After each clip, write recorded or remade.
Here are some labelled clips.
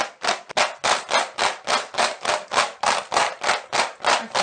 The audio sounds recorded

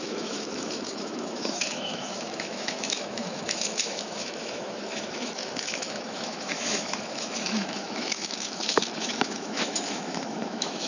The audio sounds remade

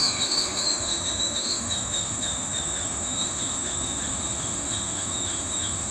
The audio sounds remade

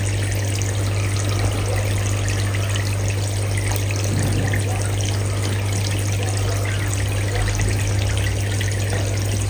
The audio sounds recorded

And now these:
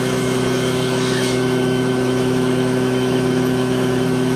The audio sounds remade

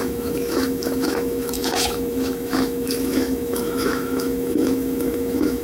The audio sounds remade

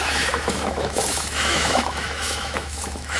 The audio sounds remade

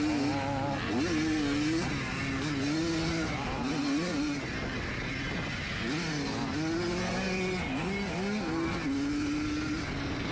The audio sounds recorded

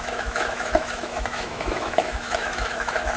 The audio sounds remade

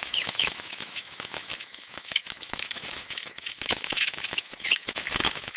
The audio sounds remade